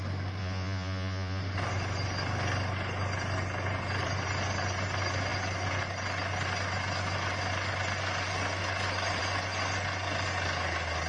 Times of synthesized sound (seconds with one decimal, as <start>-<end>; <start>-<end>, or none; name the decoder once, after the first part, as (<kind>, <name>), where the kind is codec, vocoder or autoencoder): 0.4-1.4 (vocoder, Vocos)